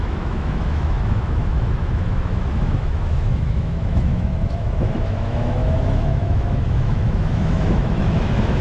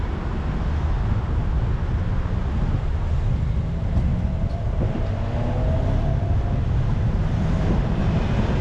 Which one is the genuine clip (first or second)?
second